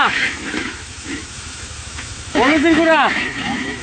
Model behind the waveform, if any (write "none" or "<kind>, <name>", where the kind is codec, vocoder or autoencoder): autoencoder, DAC-VAE